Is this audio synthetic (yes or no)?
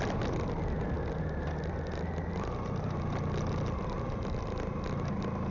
no